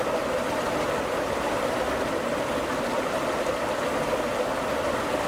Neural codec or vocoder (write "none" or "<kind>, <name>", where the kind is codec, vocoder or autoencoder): none